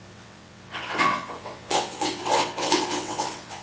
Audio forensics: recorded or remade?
remade